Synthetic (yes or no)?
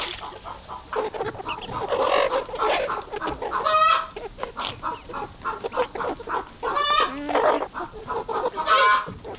no